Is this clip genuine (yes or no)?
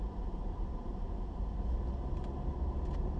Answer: yes